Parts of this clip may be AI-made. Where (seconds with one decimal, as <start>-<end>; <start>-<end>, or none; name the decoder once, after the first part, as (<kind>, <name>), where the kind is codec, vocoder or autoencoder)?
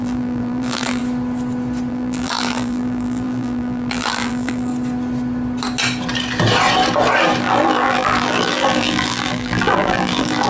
0.0-1.0 (vocoder, BigVGAN v2); 1.9-4.7; 7.4-10.5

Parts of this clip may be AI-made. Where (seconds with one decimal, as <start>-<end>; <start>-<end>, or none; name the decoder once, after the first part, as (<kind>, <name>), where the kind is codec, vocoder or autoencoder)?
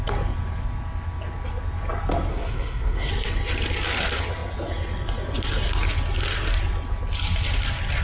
2.3-3.1 (codec, SNAC)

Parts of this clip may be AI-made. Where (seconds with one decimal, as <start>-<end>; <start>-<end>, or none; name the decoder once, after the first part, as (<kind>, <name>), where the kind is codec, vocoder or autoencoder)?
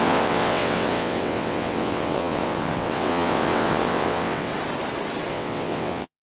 0.0-4.5 (vocoder, WaveNeXt); 5.3-6.2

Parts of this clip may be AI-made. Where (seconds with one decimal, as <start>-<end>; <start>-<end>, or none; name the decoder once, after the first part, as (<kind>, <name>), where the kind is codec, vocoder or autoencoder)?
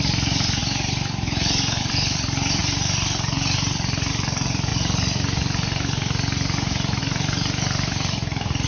0.0-0.6 (vocoder, BigVGAN v2); 1.8-2.6; 4.1-4.7; 7.0-8.7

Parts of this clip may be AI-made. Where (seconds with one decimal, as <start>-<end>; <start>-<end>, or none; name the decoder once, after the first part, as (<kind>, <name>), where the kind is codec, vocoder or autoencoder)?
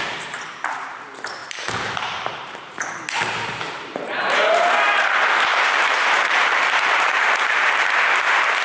1.4-4.7 (vocoder, BigVGAN v2); 5.5-8.0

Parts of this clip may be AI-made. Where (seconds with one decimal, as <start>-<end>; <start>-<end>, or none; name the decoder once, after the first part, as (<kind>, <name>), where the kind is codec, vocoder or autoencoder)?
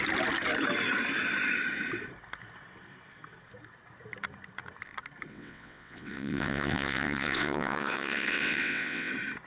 5.3-9.1 (vocoder, WaveNeXt)